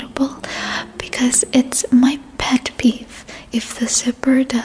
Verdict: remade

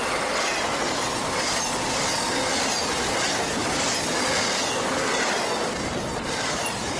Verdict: recorded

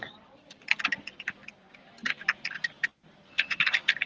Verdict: remade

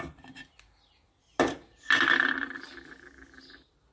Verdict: recorded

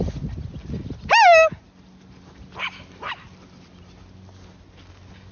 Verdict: recorded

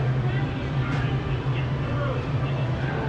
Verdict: remade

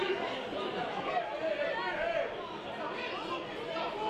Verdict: recorded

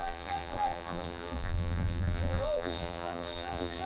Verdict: remade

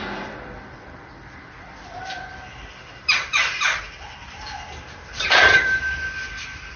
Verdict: remade